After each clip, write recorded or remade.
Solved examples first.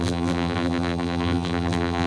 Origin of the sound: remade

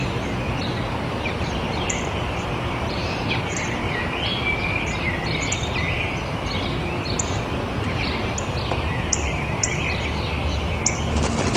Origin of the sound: remade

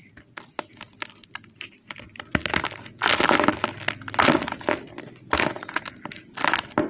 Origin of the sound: recorded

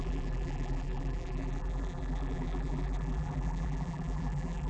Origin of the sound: remade